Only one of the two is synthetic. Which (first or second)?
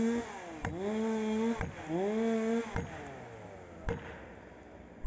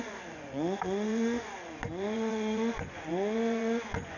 second